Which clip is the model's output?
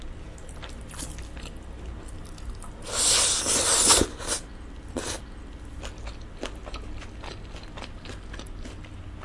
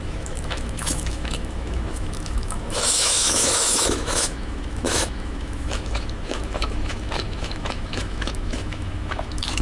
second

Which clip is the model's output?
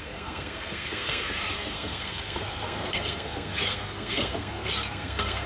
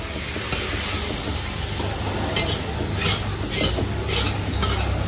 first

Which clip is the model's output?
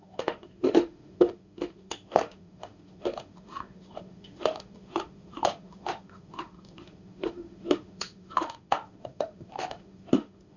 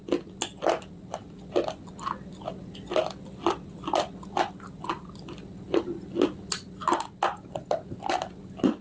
first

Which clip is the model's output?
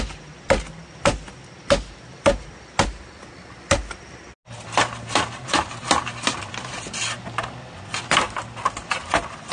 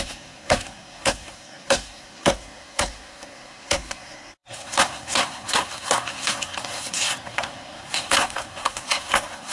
second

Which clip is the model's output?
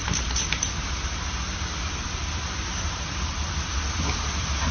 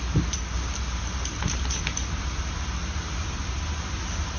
first